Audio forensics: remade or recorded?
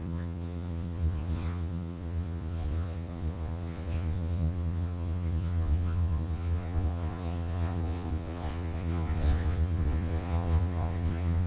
remade